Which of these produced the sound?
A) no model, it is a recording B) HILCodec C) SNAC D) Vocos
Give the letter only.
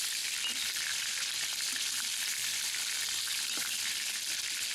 A